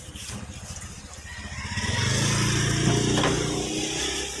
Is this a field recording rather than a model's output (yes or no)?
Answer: yes